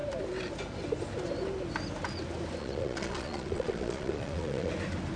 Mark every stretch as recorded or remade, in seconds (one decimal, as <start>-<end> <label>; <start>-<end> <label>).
0.0-2.6 recorded; 2.6-4.7 remade; 4.7-5.2 recorded